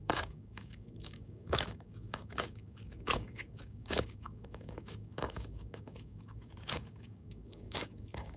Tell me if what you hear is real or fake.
fake